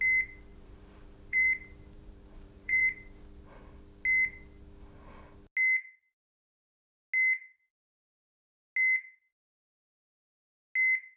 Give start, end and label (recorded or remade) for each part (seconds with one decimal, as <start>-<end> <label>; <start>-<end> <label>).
0.0-0.5 recorded; 0.5-3.2 remade; 3.2-11.2 recorded